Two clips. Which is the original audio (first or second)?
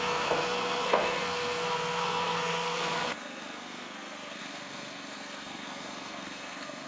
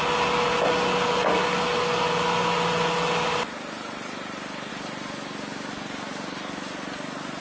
second